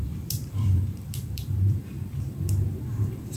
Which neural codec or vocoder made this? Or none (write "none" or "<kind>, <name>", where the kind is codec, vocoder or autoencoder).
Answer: vocoder, BigVGAN v2